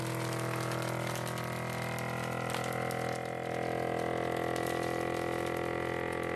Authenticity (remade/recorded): recorded